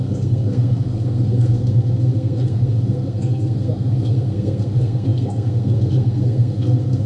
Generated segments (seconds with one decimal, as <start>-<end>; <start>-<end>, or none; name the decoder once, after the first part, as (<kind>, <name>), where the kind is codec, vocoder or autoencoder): 0.0-7.1 (codec, SNAC)